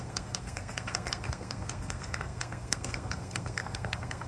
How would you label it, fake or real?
fake